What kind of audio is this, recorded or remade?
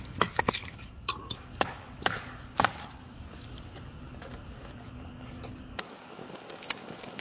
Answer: remade